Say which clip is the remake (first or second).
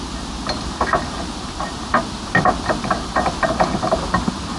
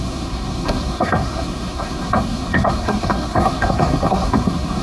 second